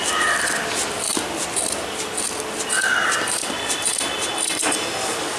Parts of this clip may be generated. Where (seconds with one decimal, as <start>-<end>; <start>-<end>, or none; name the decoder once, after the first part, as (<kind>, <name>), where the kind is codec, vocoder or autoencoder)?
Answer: none

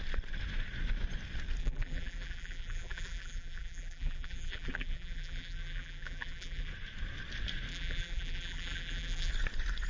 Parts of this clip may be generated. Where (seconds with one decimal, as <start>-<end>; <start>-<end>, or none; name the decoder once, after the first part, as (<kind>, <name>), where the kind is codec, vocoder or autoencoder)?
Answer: 1.6-6.7 (vocoder, BigVGAN v2); 7.7-9.3

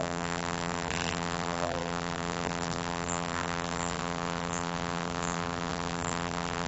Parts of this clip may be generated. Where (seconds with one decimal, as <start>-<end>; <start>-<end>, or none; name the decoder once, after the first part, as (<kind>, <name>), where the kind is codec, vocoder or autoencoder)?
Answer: 0.0-6.7 (vocoder, BigVGAN v2)